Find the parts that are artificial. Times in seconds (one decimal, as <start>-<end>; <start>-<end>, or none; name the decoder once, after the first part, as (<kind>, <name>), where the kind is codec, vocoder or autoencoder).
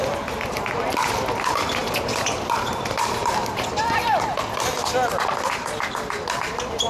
none